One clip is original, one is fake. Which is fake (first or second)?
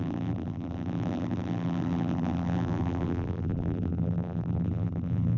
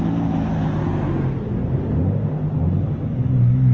first